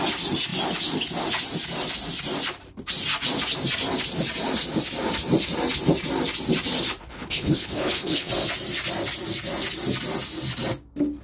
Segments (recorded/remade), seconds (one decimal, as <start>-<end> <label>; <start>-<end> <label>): 0.0-7.0 recorded; 7.0-8.3 remade; 8.3-11.2 recorded